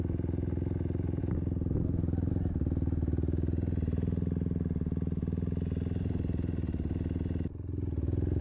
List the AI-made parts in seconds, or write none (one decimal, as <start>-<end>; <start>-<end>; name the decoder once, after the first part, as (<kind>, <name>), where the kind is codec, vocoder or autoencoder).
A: none